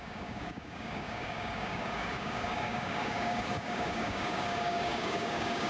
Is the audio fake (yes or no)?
yes